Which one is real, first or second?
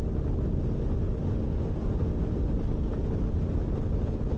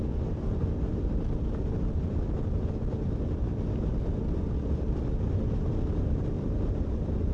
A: first